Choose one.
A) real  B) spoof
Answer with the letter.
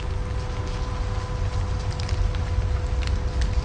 A